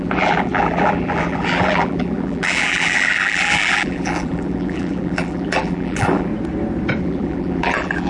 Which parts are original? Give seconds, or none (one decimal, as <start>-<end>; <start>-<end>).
6.3-7.0